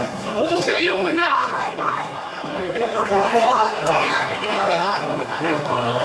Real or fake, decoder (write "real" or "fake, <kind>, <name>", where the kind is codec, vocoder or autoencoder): fake, codec, SNAC